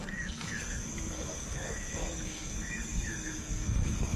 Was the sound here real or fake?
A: fake